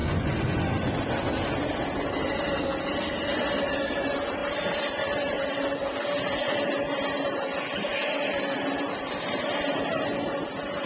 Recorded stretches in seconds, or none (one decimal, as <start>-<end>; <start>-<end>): 0.9-10.9